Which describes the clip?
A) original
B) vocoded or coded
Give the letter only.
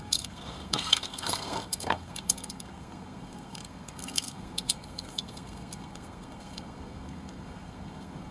B